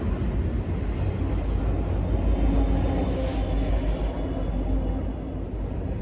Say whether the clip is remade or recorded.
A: recorded